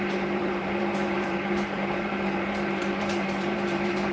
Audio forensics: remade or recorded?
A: remade